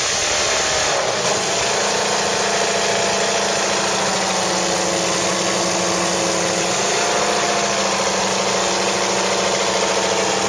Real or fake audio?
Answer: real